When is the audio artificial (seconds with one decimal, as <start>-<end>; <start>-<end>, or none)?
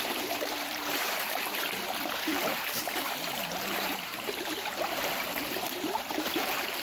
0.0-5.0; 6.0-6.8